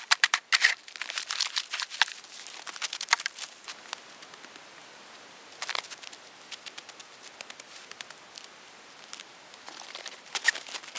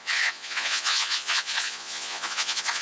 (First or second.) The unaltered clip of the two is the first